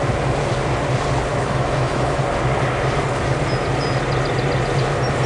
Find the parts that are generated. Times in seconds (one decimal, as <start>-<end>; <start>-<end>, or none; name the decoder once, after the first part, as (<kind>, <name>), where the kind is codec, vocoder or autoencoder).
1.3-2.2 (autoencoder, DAC-VAE)